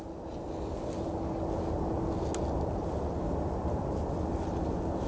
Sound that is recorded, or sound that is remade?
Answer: recorded